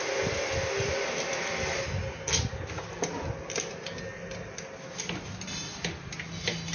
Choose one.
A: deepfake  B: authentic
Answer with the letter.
B